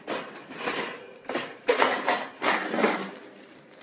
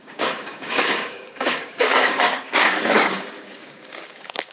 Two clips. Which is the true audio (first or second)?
first